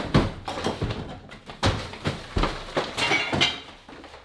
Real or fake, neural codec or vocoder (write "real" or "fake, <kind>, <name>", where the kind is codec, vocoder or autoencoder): real